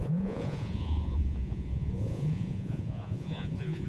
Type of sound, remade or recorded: remade